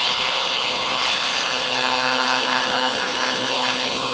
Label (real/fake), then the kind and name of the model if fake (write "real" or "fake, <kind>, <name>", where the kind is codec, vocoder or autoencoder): fake, codec, HILCodec